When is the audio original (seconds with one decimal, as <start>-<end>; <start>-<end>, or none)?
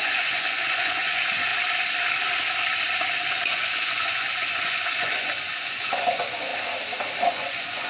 1.5-3.5; 6.5-7.3